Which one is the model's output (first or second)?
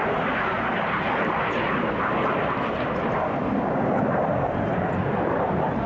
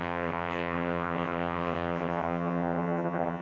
second